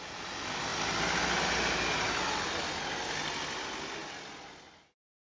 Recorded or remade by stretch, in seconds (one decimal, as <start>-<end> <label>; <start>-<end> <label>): 0.0-5.2 recorded